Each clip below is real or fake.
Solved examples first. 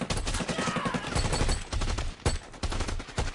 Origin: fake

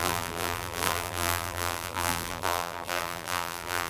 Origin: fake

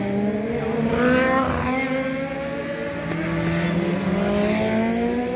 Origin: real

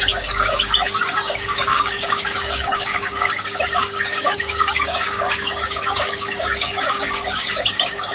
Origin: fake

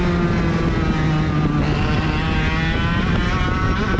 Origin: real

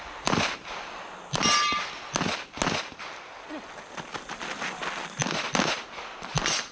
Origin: real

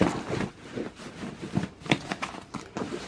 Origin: real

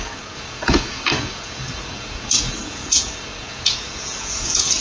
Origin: fake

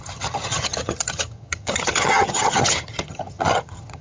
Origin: fake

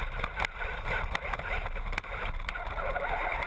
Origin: real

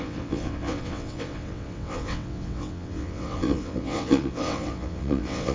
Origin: fake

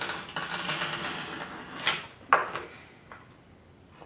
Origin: real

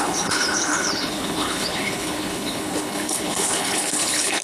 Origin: fake